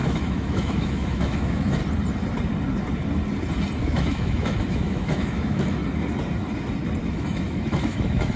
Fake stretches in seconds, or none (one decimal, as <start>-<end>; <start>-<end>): 0.0-1.8; 3.8-5.8; 7.1-8.4